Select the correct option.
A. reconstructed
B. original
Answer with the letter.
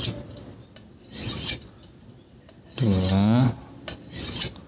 B